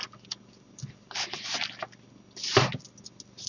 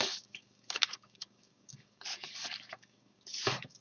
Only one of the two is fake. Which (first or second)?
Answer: second